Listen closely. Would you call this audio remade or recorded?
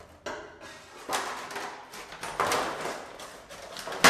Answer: recorded